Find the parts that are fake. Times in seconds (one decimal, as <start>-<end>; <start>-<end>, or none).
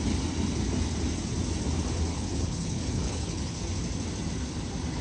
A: 2.1-3.6